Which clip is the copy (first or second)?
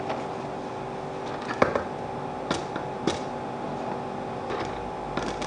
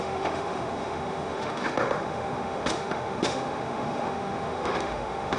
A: second